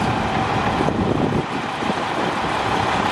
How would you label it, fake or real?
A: real